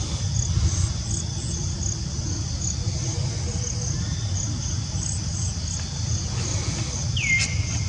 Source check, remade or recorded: recorded